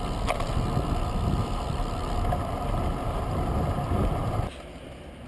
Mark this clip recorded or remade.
recorded